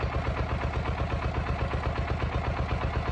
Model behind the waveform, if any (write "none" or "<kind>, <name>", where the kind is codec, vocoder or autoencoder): none